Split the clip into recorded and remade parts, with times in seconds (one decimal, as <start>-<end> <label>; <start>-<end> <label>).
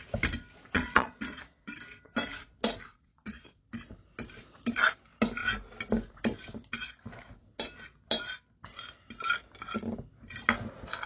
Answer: 0.0-0.7 recorded; 0.7-1.7 remade; 1.7-2.9 recorded; 2.9-3.5 remade; 3.5-11.1 recorded